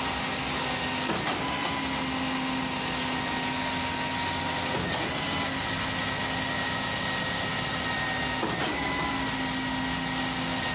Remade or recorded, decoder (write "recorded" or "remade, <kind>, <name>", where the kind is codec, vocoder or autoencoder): recorded